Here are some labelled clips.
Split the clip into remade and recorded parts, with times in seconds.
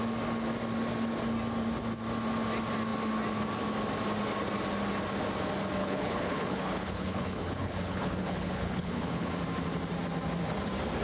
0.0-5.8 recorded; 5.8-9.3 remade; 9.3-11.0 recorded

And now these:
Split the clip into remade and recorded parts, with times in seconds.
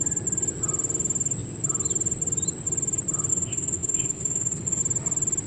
0.0-3.3 recorded; 3.3-4.8 remade; 4.8-5.5 recorded